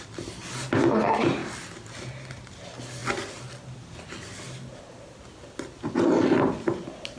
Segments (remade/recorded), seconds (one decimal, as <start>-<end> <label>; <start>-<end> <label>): 0.0-7.2 recorded